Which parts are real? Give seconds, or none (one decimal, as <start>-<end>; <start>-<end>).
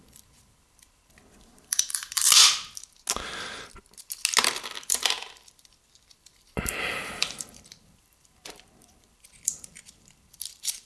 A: 2.4-4.4